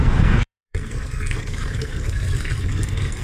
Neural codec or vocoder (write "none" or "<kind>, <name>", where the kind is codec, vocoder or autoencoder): codec, SNAC